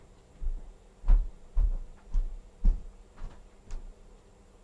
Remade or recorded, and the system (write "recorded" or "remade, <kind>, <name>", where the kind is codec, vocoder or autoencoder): remade, vocoder, BigVGAN v2